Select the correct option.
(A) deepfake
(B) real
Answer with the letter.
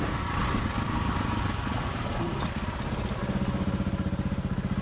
B